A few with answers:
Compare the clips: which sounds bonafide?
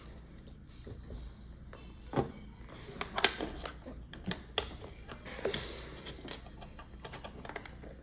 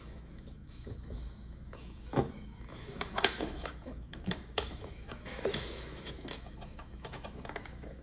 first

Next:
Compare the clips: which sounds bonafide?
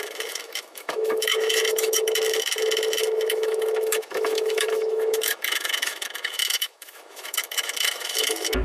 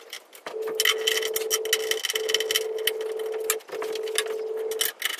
second